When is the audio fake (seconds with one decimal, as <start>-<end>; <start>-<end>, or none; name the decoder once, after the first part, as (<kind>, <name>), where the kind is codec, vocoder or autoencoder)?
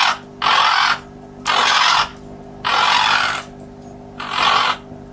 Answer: none